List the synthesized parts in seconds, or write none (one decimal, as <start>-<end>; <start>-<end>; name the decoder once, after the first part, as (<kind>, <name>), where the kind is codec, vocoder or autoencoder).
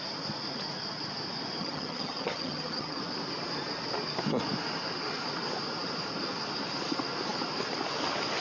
1.6-3.0 (vocoder, HiFi-GAN)